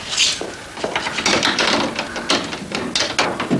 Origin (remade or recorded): recorded